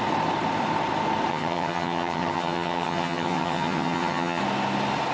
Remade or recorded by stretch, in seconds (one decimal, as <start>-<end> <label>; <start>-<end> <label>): 0.0-1.3 recorded; 1.3-4.4 remade; 4.4-5.1 recorded